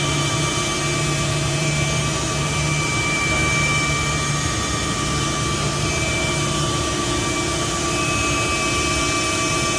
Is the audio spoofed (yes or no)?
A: yes